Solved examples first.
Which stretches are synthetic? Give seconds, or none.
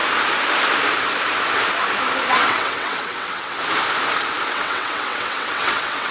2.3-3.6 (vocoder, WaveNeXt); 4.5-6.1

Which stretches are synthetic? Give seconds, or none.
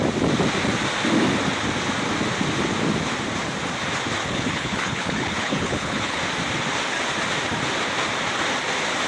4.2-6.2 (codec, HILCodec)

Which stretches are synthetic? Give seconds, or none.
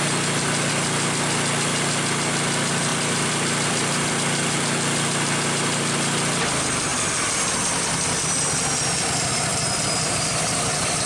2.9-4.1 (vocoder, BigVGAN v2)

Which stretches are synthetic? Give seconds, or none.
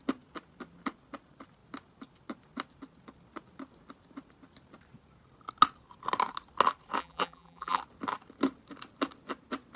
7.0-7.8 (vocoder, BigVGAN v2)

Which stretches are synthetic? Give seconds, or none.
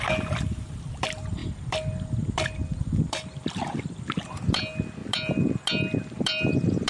none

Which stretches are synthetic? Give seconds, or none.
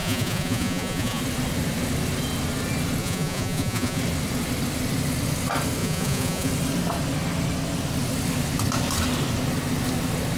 0.0-1.2 (vocoder, Vocos); 3.0-4.0; 5.8-6.5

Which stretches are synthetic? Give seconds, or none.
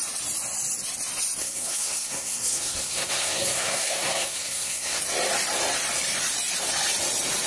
1.4-5.0 (codec, SNAC)